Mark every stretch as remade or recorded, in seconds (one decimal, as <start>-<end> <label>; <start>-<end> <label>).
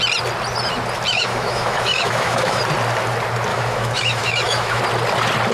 0.0-1.1 recorded; 1.1-2.6 remade; 2.6-3.5 recorded; 3.5-4.8 remade; 4.8-5.5 recorded